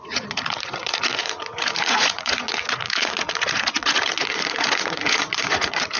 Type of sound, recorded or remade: remade